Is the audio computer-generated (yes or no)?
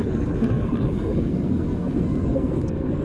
yes